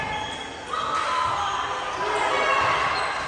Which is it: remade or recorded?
recorded